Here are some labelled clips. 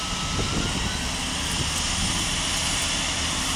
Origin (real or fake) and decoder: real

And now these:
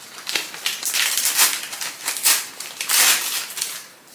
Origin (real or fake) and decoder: fake, vocoder, BigVGAN v2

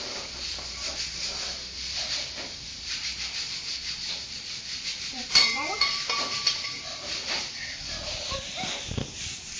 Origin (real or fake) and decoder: fake, vocoder, BigVGAN v2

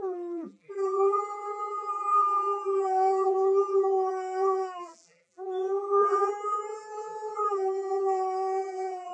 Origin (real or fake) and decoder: fake, vocoder, BigVGAN v2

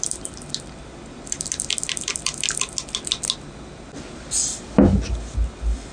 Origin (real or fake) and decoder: real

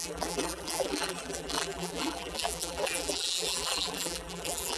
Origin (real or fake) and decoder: fake, vocoder, BigVGAN v2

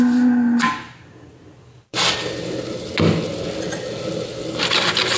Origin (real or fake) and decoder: real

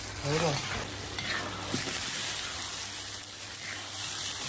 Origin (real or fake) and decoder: real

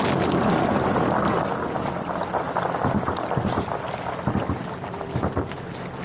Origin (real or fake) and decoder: real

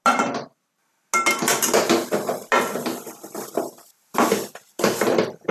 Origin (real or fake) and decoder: real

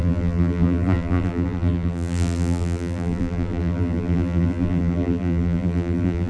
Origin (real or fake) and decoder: fake, vocoder, BigVGAN v2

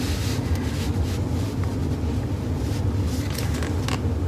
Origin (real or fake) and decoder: real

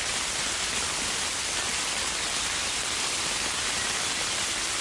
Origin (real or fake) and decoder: real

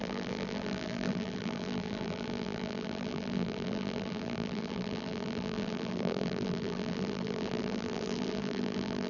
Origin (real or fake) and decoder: fake, vocoder, BigVGAN v2